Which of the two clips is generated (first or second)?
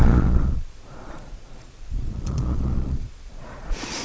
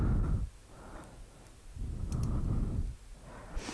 first